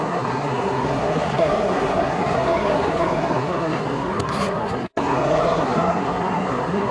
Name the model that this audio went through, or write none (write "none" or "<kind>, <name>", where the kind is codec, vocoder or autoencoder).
codec, SNAC